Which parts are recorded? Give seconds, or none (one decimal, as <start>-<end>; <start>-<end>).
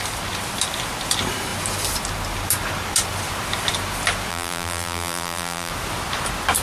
0.0-4.3; 5.7-6.6